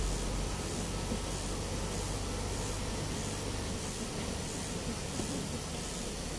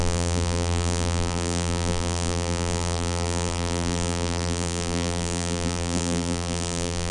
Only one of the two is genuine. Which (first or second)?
first